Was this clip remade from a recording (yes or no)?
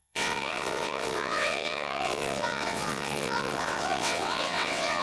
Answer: yes